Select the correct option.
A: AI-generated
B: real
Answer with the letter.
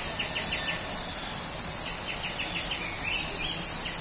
B